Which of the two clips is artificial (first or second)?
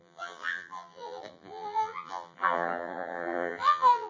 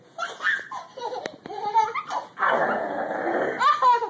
first